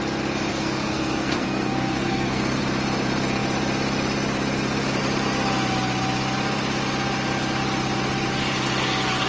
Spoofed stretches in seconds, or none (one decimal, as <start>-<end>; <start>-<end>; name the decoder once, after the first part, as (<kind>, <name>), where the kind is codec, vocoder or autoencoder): 0.5-2.6 (codec, SNAC)